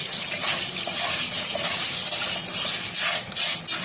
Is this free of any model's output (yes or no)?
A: yes